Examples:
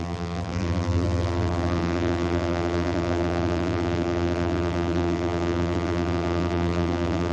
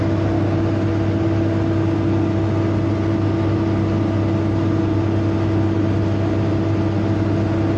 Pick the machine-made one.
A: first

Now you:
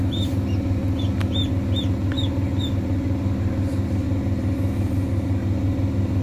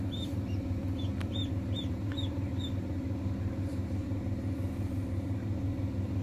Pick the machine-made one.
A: second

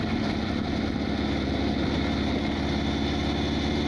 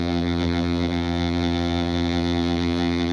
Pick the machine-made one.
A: second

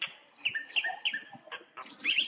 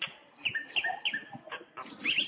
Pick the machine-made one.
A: first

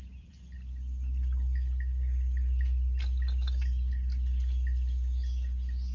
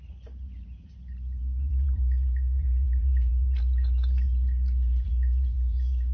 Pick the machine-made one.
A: second